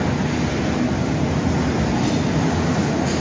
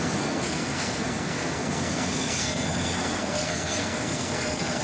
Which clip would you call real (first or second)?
first